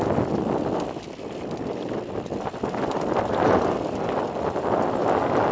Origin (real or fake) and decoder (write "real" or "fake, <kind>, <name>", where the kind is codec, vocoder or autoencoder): real